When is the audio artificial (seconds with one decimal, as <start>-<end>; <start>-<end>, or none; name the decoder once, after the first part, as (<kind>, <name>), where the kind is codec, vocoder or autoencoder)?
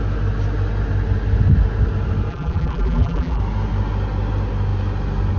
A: 2.3-3.4 (vocoder, BigVGAN v2)